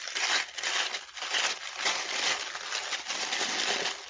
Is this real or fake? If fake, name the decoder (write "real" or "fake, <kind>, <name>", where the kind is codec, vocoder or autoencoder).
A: real